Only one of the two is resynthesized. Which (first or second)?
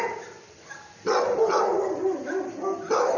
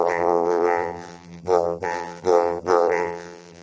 second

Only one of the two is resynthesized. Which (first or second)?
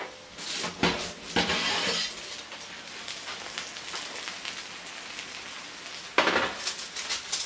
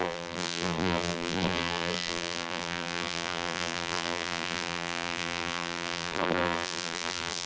second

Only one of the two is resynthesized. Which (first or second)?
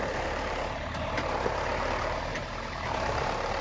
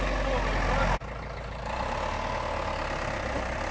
first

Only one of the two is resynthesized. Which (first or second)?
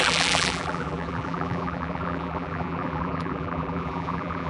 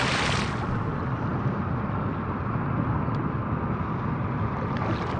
first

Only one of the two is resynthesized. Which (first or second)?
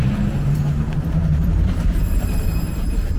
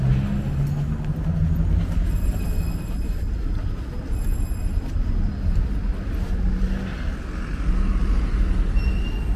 first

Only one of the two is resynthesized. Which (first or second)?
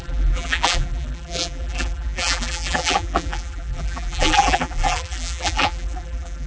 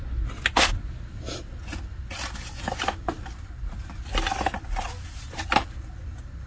first